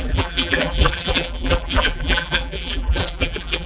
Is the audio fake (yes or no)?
yes